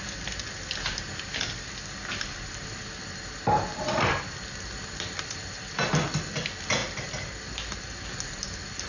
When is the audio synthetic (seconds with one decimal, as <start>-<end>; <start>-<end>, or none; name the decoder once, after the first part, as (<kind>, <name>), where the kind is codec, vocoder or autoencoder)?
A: none